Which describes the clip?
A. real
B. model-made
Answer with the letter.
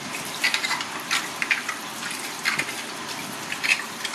B